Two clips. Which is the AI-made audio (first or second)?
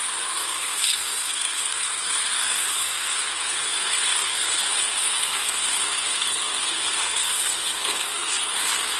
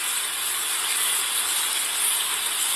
first